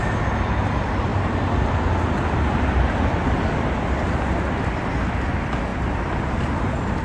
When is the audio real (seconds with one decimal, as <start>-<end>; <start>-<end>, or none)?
0.0-5.7; 6.5-7.0